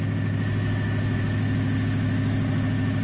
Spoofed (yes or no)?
no